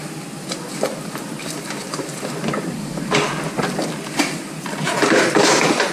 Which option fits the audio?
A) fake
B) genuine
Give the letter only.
B